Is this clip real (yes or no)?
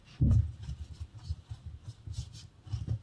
yes